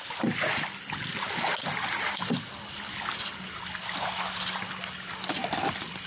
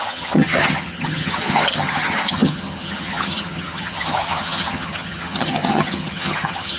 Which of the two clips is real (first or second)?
first